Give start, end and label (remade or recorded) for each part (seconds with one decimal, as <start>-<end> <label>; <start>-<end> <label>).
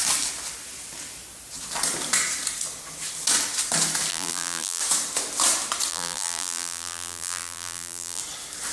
0.0-4.1 recorded; 4.1-4.8 remade; 4.8-5.9 recorded; 5.9-8.2 remade; 8.2-8.7 recorded